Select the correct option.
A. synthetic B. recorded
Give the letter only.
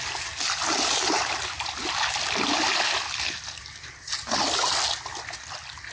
B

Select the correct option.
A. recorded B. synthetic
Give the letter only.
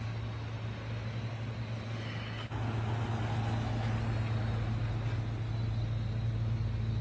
A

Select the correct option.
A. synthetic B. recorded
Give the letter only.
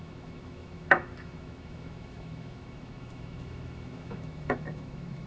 A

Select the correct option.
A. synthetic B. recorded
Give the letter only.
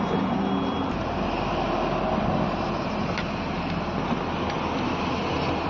B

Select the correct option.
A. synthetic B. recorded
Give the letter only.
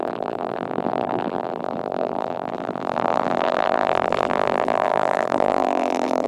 A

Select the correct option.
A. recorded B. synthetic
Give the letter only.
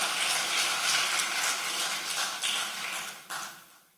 A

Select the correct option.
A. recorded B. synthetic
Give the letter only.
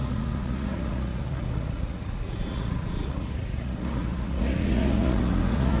B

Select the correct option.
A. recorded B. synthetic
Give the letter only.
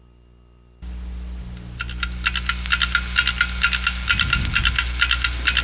A